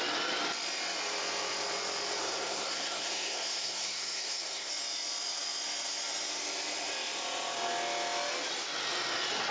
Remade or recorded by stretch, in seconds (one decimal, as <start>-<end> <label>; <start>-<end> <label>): 0.0-2.2 recorded; 2.2-4.7 remade; 4.7-9.5 recorded